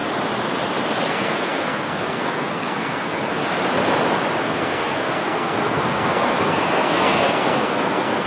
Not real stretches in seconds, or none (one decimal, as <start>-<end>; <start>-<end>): 1.1-3.4; 4.4-8.3